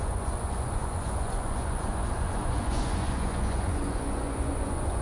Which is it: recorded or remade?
remade